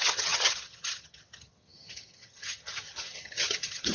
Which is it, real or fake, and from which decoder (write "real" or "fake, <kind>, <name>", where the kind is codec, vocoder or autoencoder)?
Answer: fake, vocoder, HiFi-GAN